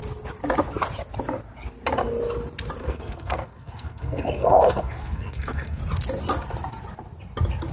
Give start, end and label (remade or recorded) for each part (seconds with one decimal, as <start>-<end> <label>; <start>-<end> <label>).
0.0-2.8 recorded; 2.8-5.8 remade; 5.8-7.7 recorded